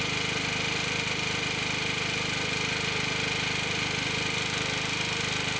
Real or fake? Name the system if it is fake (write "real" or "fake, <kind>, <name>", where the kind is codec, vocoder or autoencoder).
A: real